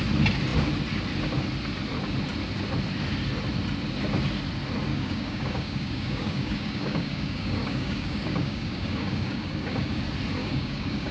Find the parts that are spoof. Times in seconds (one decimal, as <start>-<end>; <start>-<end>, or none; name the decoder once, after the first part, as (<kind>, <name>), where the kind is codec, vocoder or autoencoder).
4.9-10.0 (codec, DAC); 10.4-11.1